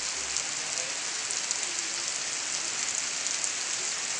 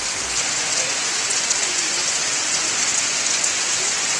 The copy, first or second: second